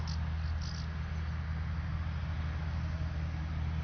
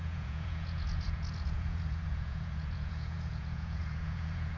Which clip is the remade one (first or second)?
second